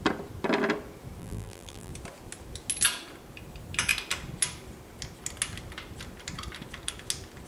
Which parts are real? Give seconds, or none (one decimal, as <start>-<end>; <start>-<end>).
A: 0.0-1.2; 1.9-7.5